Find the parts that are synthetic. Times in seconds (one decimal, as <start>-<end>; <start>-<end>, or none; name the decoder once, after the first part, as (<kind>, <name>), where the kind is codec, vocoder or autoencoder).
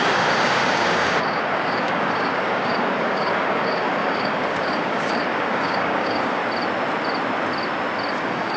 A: 0.0-6.4 (codec, DAC); 8.1-8.6